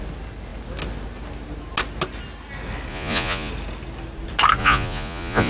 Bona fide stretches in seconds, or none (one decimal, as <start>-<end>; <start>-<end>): 0.0-2.9; 3.5-4.6

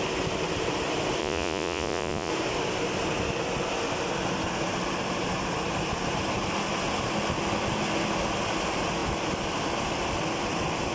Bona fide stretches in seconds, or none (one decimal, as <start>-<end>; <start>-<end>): 0.0-1.2; 2.3-10.9